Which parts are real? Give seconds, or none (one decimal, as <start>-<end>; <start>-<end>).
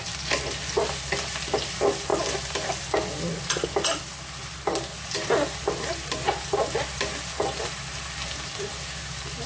0.0-9.5